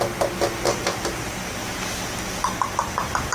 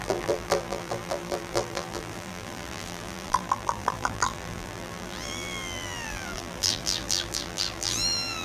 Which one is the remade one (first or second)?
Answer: second